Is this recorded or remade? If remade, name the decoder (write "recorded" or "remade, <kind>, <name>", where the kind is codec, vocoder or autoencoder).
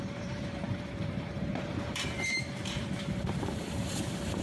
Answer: remade, vocoder, BigVGAN v2